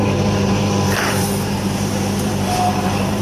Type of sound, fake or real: fake